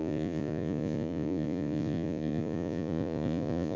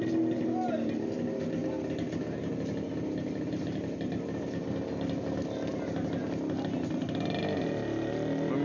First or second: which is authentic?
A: second